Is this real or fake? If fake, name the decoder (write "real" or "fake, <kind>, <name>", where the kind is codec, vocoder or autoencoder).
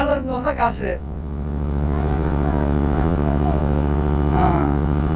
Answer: fake, vocoder, WaveNeXt